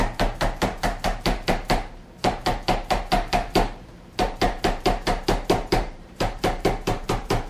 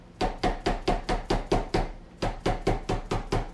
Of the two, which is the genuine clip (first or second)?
second